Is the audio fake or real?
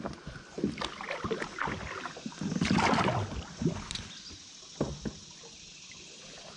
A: real